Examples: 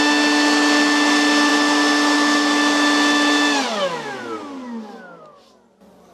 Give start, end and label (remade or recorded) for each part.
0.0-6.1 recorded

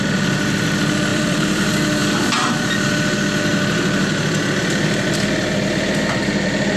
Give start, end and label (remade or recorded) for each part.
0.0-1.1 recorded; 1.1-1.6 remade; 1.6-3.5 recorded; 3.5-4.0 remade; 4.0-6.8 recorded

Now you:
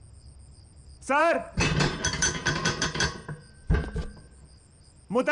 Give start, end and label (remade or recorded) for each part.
0.0-1.2 recorded; 1.2-3.7 remade; 3.7-5.3 recorded

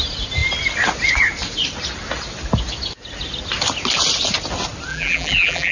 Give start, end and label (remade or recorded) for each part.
0.0-4.9 recorded; 4.9-5.7 remade

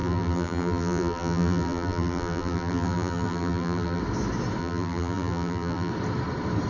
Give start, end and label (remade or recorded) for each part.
0.0-4.0 remade; 4.0-4.6 recorded; 4.6-5.9 remade; 5.9-6.7 recorded

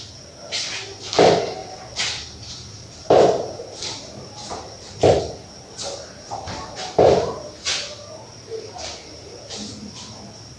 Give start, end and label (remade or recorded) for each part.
0.0-1.6 recorded; 1.6-5.2 remade; 5.2-10.6 recorded